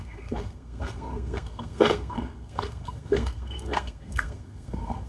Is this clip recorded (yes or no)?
no